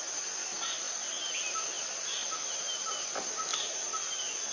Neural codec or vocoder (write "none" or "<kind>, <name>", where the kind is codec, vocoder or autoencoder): none